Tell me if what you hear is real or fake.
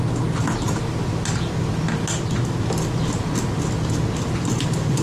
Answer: real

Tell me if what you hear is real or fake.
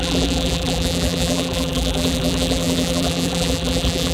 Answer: fake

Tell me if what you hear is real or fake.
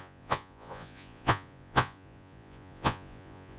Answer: fake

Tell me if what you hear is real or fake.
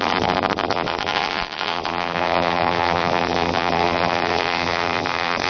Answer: fake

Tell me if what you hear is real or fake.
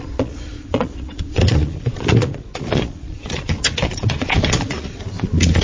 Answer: fake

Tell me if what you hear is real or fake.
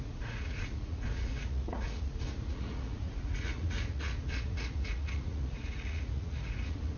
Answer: fake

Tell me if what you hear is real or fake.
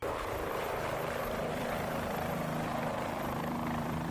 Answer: fake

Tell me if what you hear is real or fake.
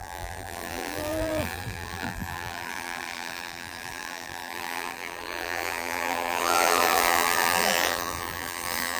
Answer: fake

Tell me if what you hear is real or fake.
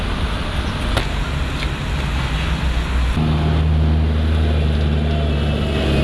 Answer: real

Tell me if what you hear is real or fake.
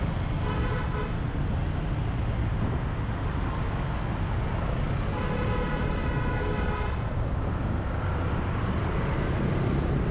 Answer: real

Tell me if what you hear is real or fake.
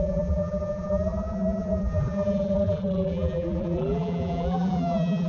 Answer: fake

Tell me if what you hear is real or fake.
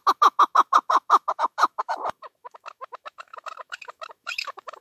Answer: fake